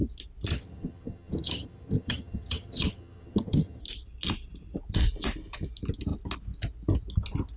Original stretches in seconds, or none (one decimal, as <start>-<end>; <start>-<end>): 0.0-0.5; 3.8-7.6